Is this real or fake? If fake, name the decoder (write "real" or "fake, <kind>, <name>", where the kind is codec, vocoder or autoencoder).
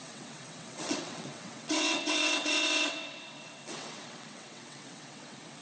fake, vocoder, WaveNeXt